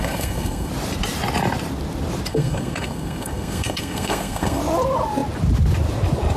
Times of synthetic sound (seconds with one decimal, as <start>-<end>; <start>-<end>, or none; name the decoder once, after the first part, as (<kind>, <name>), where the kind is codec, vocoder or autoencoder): 0.0-0.7 (codec, SNAC); 2.3-4.6

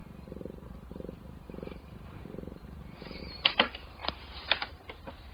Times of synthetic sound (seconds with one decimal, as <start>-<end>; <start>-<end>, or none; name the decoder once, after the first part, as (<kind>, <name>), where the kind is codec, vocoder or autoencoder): 0.0-4.0 (vocoder, BigVGAN v2); 4.7-5.3

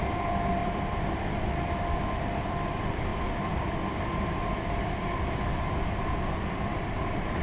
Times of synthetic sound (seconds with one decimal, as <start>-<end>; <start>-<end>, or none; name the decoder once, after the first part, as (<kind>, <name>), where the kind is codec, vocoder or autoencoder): 0.0-7.4 (vocoder, BigVGAN v2)

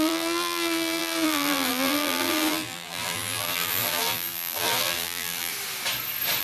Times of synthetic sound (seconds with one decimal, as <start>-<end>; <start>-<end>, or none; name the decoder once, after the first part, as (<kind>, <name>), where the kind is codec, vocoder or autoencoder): 0.0-5.5 (vocoder, BigVGAN v2)

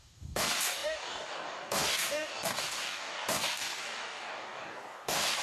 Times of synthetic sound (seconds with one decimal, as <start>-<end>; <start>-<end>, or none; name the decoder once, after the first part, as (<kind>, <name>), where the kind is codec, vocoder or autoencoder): 0.0-5.4 (codec, DAC)

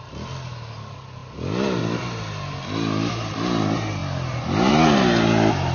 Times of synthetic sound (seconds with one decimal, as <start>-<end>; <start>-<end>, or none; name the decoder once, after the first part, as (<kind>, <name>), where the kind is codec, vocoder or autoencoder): none